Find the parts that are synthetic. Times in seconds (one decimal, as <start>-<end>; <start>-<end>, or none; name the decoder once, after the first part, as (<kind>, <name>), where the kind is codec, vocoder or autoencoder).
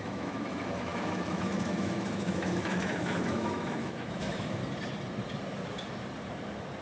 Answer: 0.0-4.6 (autoencoder, DAC-VAE)